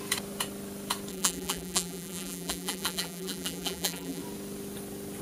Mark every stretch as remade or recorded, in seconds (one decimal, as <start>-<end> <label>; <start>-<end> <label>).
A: 0.0-1.1 recorded; 1.1-4.2 remade; 4.2-5.2 recorded